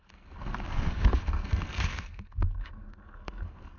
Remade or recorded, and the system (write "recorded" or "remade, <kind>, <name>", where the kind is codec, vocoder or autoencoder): remade, codec, SNAC